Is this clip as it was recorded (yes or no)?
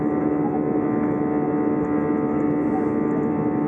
yes